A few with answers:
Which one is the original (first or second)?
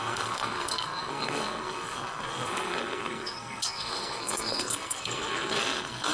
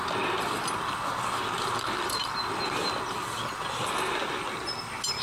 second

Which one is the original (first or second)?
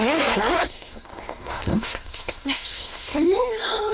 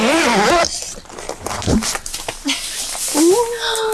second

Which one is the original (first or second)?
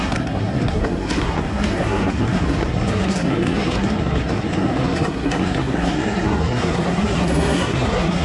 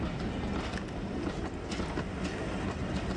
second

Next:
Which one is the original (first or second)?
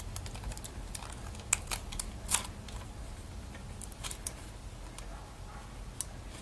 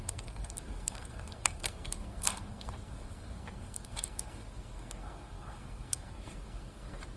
first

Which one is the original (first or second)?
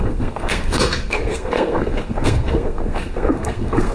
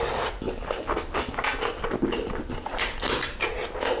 second